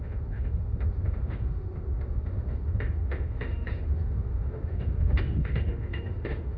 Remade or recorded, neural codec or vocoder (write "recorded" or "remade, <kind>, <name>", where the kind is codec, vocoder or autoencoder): remade, autoencoder, DAC-VAE